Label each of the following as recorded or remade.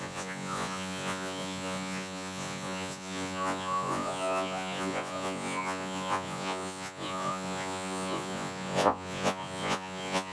remade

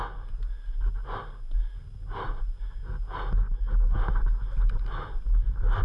recorded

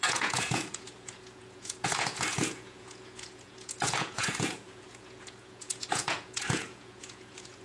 remade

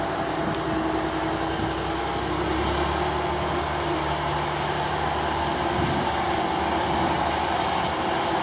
recorded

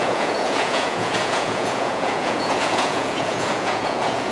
remade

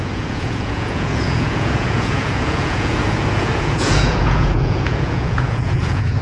remade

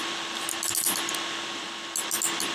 recorded